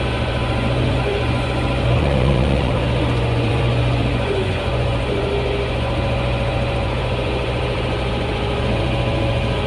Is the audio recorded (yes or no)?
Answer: no